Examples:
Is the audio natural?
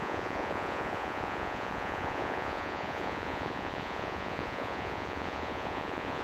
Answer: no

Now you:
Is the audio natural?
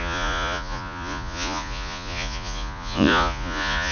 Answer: no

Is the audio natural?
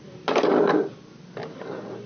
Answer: yes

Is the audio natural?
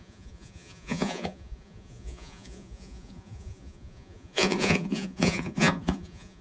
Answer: no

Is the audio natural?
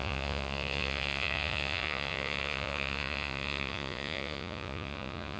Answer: no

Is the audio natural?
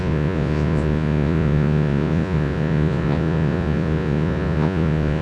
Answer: no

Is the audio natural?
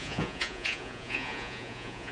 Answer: no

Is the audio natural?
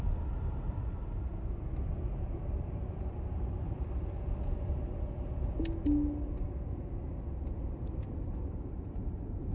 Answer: yes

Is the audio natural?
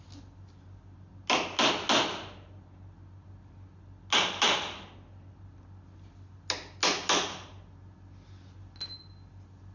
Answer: yes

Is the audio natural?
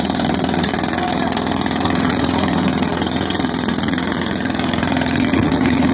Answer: no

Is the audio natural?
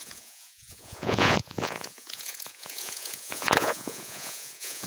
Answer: no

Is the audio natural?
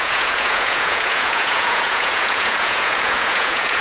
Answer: no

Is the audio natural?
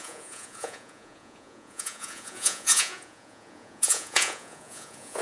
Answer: no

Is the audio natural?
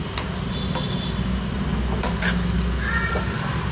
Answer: yes